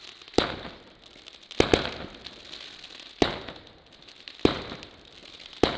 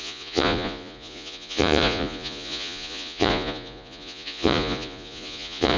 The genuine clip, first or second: first